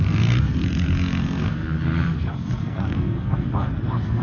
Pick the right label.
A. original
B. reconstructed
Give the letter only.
B